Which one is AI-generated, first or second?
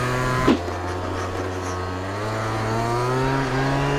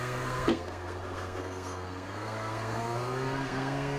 second